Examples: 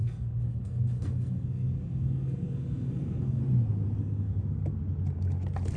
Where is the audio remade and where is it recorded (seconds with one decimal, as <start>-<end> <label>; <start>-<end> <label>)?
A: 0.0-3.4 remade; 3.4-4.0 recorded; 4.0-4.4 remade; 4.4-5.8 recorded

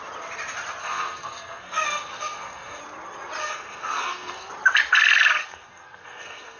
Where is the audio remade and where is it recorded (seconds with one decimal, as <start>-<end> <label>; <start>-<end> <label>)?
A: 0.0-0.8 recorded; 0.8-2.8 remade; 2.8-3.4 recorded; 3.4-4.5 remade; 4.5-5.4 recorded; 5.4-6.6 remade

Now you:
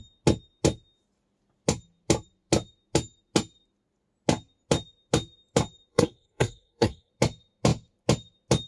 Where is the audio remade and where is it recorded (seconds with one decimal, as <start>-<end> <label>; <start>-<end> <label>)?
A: 0.0-5.9 recorded; 5.9-7.1 remade; 7.1-8.7 recorded